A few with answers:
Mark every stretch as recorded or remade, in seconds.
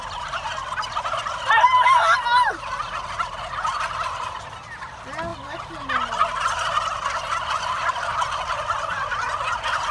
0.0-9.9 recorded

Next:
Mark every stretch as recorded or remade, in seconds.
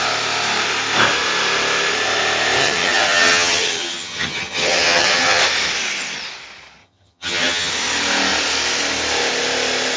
0.0-2.6 recorded; 2.6-5.4 remade; 5.4-6.8 recorded; 6.8-7.7 remade; 7.7-10.0 recorded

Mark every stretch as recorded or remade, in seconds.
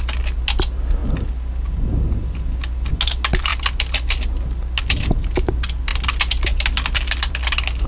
0.0-7.9 recorded